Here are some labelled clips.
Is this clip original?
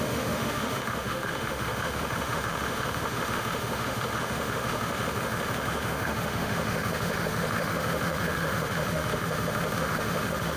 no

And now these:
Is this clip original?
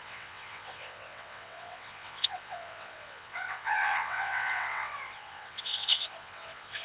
no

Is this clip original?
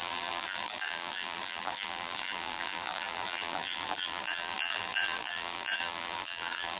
no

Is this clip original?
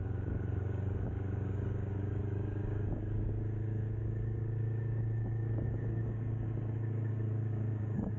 no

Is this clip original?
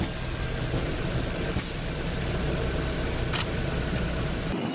yes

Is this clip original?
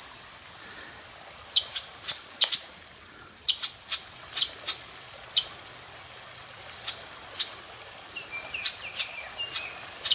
yes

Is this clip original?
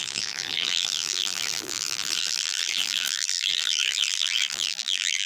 no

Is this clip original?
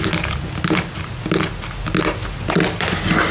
yes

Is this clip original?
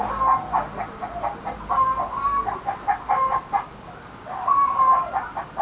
yes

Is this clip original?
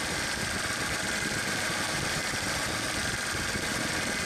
yes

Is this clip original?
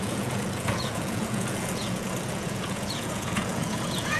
no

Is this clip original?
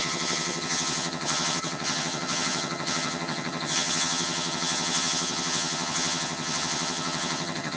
no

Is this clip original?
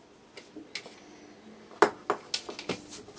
yes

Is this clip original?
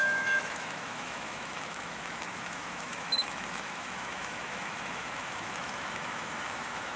no